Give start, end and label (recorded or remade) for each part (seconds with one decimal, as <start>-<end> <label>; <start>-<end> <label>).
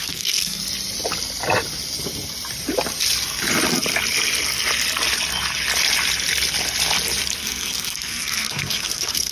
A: 0.0-0.6 remade; 0.6-7.4 recorded; 7.4-9.3 remade